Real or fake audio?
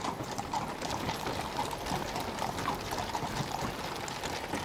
real